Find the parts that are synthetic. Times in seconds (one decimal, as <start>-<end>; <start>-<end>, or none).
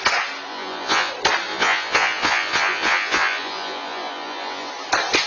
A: 0.5-1.1; 1.5-4.7